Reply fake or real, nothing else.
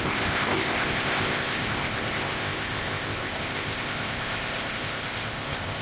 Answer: fake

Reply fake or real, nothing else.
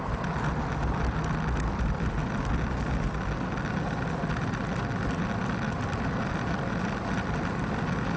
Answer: real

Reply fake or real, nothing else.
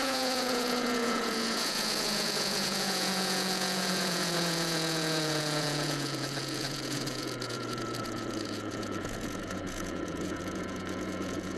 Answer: fake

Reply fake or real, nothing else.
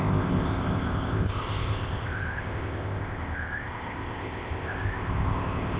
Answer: fake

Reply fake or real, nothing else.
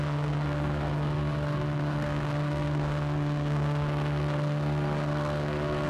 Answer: fake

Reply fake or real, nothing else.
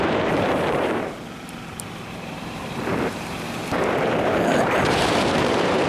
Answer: fake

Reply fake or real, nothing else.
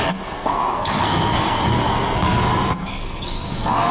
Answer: fake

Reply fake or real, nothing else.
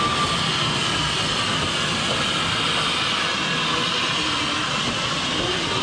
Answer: real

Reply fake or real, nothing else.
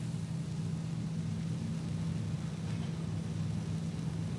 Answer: real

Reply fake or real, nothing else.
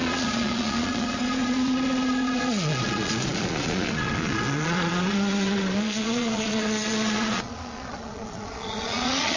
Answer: fake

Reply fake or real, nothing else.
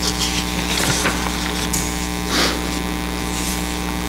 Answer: real